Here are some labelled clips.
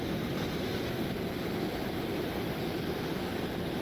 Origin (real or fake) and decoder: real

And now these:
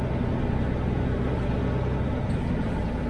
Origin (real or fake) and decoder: real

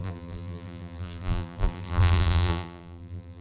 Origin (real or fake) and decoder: fake, vocoder, BigVGAN v2